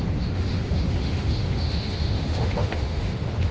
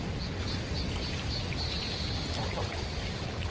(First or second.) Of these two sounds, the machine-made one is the first